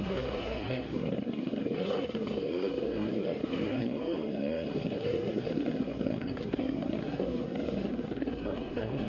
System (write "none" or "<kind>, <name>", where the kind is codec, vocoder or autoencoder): codec, SNAC